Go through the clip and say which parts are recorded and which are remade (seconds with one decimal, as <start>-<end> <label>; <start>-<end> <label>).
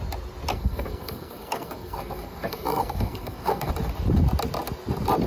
0.0-0.5 recorded; 0.5-3.7 remade; 3.7-5.3 recorded